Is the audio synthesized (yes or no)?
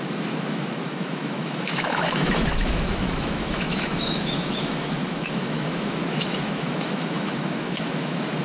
yes